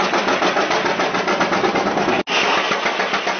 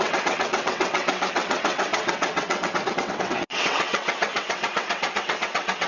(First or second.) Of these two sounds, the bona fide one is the first